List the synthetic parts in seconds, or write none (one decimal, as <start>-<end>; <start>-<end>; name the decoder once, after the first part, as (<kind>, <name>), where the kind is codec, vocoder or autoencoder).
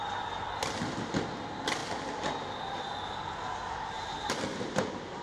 none